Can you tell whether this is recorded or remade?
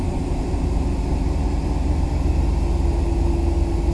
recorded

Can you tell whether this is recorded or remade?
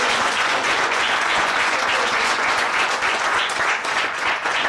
remade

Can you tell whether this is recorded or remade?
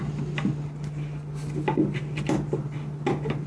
recorded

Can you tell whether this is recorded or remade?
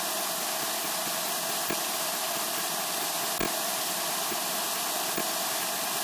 recorded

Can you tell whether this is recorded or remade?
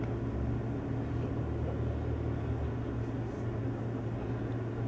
recorded